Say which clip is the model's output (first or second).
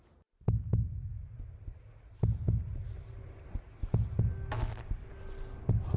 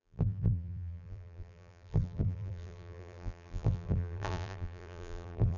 second